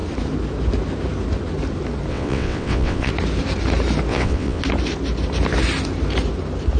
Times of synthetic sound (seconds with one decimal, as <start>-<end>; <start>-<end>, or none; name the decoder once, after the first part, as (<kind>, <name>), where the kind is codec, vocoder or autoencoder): 2.1-3.1 (vocoder, WaveNeXt); 4.1-4.6